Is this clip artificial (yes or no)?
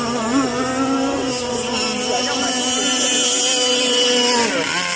no